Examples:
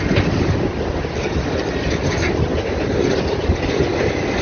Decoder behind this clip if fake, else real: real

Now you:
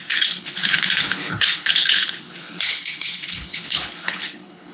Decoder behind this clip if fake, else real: fake, codec, HILCodec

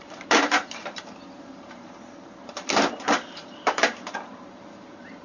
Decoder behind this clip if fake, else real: fake, vocoder, BigVGAN v2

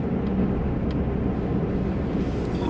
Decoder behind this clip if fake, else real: real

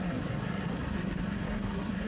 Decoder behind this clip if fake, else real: fake, codec, SNAC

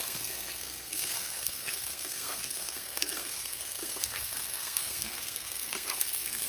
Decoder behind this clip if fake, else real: fake, codec, SNAC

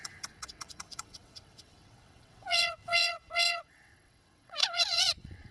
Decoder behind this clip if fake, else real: fake, vocoder, WaveNeXt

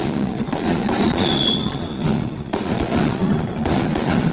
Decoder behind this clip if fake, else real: fake, vocoder, Vocos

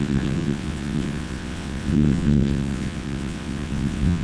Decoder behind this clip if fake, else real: fake, vocoder, WaveNeXt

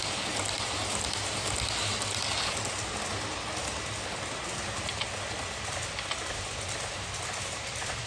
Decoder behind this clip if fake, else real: real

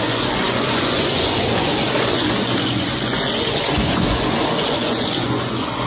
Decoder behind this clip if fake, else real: fake, vocoder, Vocos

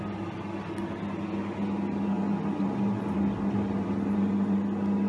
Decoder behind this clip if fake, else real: real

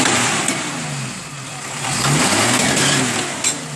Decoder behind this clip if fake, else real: real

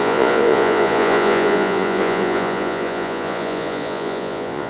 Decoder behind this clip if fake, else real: fake, vocoder, Vocos